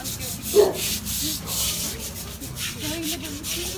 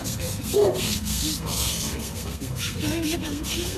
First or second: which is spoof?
second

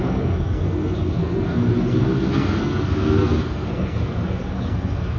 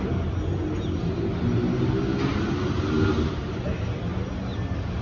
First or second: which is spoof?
first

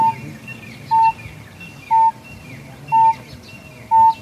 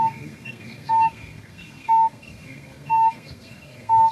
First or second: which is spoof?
second